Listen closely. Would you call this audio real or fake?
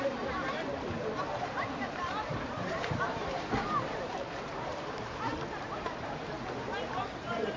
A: fake